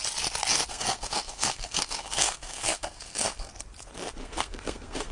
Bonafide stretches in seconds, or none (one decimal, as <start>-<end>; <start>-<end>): 0.0-0.7; 3.5-4.2